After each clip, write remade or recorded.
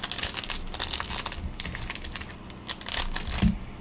recorded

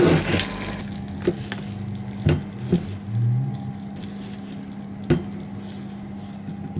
recorded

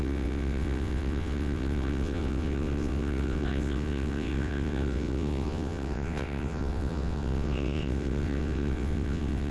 remade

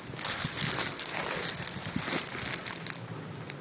recorded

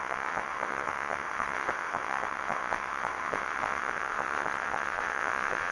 remade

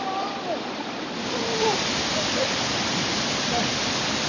recorded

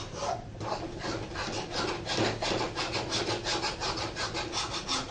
recorded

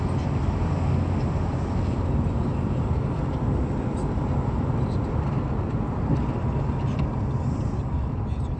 recorded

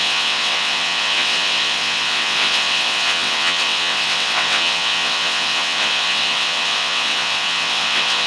remade